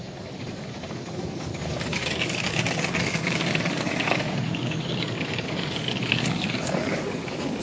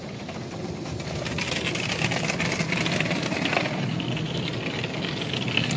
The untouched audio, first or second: second